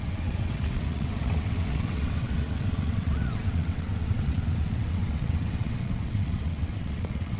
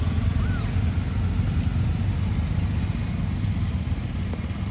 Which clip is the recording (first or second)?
second